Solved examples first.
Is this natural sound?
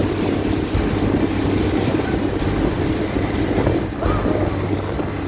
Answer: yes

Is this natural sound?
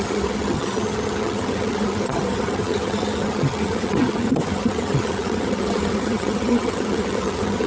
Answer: no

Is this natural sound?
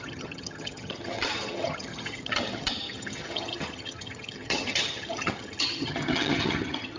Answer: no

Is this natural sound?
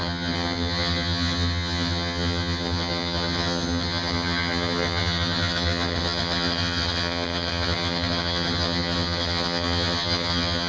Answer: no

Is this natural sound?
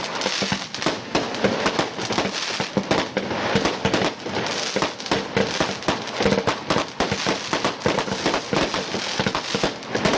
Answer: yes